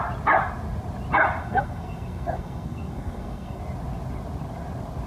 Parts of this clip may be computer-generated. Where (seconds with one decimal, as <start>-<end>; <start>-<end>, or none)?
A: 1.4-3.6